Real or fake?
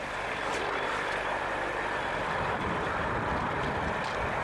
fake